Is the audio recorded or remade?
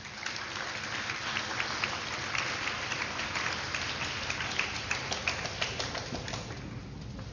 recorded